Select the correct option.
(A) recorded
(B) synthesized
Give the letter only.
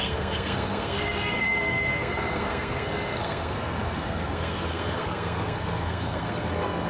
B